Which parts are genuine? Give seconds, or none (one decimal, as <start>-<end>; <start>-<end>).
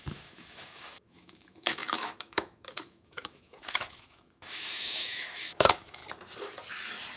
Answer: 6.0-7.2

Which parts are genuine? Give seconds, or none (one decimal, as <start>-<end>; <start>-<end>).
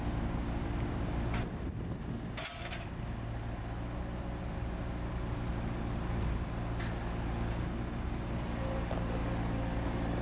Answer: 0.0-10.2